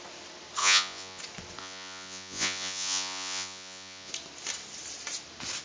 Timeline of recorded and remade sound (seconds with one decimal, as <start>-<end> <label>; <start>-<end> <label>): 0.0-0.6 recorded; 0.6-1.2 remade; 1.2-1.6 recorded; 1.6-4.1 remade; 4.1-5.6 recorded